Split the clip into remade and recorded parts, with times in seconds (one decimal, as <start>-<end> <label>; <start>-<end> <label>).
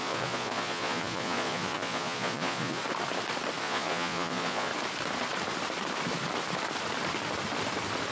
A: 0.0-2.8 remade; 2.8-3.6 recorded; 3.6-4.7 remade; 4.7-8.1 recorded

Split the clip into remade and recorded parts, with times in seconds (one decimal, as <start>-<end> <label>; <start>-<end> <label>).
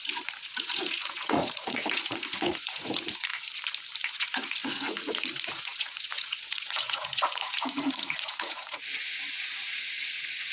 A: 0.0-3.3 remade; 3.3-4.1 recorded; 4.1-10.5 remade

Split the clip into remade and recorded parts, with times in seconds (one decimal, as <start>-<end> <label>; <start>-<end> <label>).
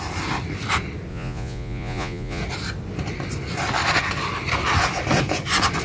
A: 0.0-1.1 recorded; 1.1-2.4 remade; 2.4-5.8 recorded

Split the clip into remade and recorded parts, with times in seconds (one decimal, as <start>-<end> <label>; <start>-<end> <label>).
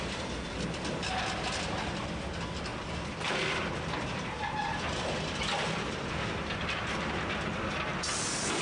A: 0.0-8.6 recorded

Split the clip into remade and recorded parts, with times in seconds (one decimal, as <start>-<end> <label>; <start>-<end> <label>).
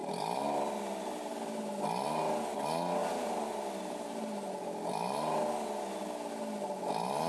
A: 0.0-7.3 recorded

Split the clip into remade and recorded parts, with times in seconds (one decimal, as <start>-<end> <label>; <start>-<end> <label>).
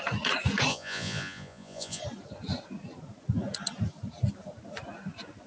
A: 0.0-0.7 recorded; 0.7-2.0 remade; 2.0-5.5 recorded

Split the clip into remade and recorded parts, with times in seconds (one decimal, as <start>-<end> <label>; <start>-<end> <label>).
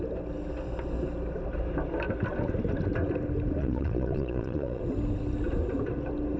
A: 0.0-3.6 recorded; 3.6-4.8 remade; 4.8-6.4 recorded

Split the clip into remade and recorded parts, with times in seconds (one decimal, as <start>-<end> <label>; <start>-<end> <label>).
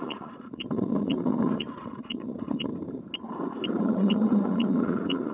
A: 0.0-2.7 remade; 2.7-3.8 recorded; 3.8-5.3 remade